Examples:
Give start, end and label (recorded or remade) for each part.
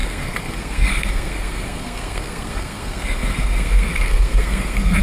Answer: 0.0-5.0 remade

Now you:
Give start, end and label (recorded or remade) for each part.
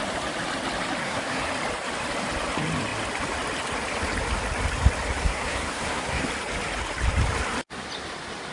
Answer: 0.0-1.0 recorded; 1.0-1.5 remade; 1.5-5.2 recorded; 5.2-6.3 remade; 6.3-8.5 recorded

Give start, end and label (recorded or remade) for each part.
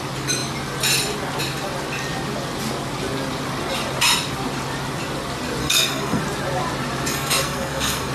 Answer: 0.0-5.6 recorded; 5.6-6.2 remade; 6.2-7.1 recorded; 7.1-8.1 remade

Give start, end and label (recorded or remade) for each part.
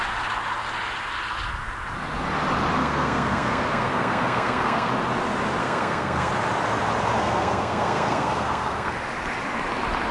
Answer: 0.0-2.8 recorded; 2.8-4.9 remade; 4.9-5.6 recorded; 5.6-6.3 remade; 6.3-7.2 recorded; 7.2-8.9 remade; 8.9-10.1 recorded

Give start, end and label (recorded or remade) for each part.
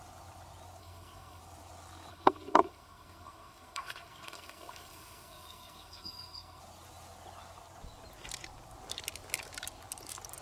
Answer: 0.0-0.8 recorded; 0.8-1.4 remade; 1.4-2.1 recorded; 2.1-6.6 remade; 6.6-10.4 recorded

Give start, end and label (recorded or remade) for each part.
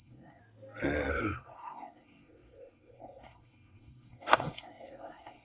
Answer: 0.0-0.4 remade; 0.4-1.1 recorded; 1.1-5.4 remade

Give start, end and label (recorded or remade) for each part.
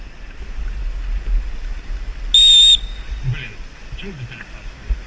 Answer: 0.0-5.1 recorded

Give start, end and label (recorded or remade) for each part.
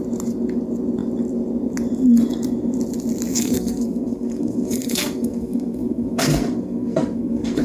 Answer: 0.0-3.3 recorded; 3.3-7.6 remade